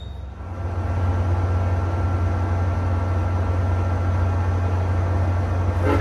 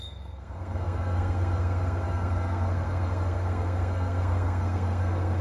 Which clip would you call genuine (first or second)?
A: first